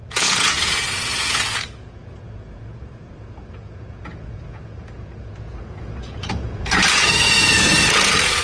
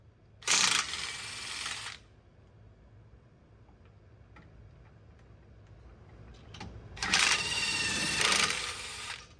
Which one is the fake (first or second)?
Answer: first